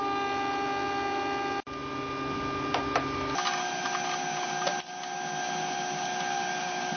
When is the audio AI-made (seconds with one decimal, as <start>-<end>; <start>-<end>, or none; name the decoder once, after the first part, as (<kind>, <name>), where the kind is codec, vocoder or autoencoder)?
none